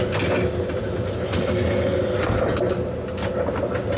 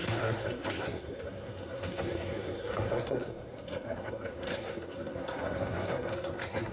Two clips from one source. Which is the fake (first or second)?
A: second